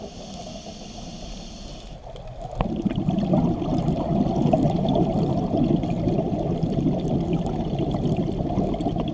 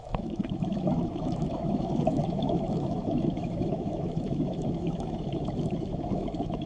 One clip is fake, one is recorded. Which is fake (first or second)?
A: second